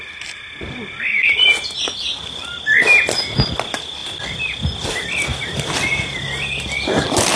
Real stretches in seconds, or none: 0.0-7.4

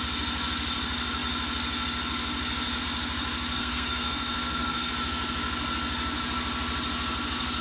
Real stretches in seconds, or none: 0.0-3.6; 4.9-7.6

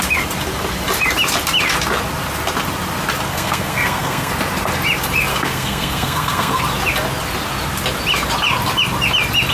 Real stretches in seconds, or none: 0.0-3.3; 4.3-5.3; 6.6-9.5

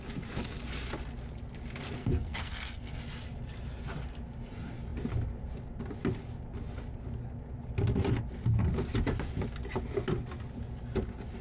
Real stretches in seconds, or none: 0.0-2.0; 3.0-11.4

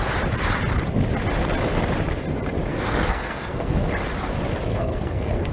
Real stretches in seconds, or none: 0.0-2.7; 3.9-4.7